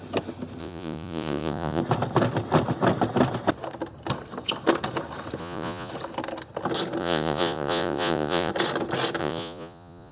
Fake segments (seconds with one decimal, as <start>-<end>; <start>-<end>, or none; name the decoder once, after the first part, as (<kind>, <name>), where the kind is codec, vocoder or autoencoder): 0.6-1.8 (vocoder, Vocos); 5.4-5.9; 7.0-8.5; 9.2-10.1